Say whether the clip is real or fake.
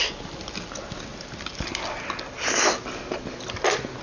real